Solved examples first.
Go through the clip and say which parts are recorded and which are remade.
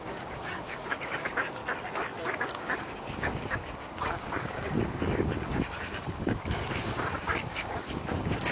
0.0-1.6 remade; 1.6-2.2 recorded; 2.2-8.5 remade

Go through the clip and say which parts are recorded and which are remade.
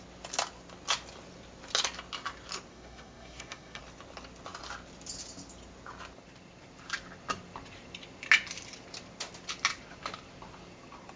0.0-2.7 recorded; 2.7-3.8 remade; 3.8-11.2 recorded